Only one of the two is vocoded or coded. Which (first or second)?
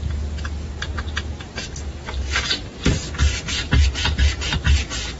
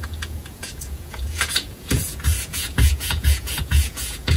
second